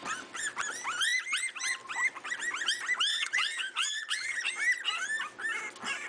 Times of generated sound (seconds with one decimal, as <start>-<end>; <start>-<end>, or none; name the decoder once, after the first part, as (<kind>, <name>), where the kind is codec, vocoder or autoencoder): 3.1-4.4 (vocoder, WaveNeXt)